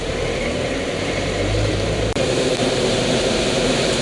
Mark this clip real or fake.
fake